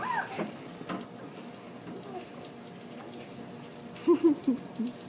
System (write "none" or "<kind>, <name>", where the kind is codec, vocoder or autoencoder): none